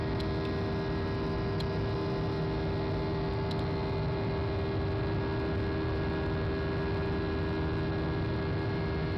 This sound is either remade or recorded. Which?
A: recorded